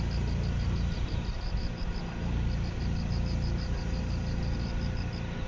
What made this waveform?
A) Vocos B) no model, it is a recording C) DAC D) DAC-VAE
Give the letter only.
B